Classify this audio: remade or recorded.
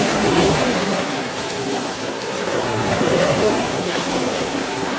remade